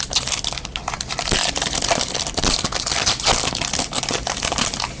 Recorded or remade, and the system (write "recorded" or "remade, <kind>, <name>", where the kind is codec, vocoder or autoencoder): recorded